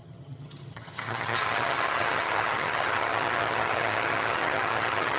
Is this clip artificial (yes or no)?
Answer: yes